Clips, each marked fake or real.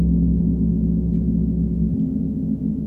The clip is real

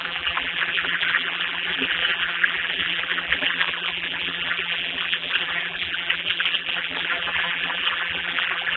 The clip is fake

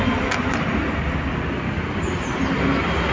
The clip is real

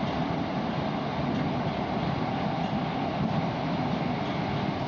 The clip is real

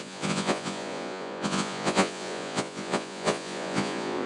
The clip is fake